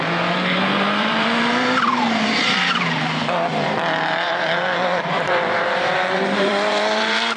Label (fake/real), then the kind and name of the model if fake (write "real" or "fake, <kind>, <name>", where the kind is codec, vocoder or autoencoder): fake, vocoder, BigVGAN v2